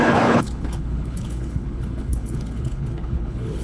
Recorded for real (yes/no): no